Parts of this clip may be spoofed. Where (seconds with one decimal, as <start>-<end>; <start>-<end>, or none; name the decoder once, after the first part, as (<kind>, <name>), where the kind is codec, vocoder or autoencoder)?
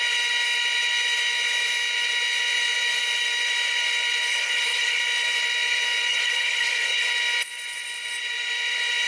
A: 4.3-5.0 (codec, HILCodec); 6.1-7.1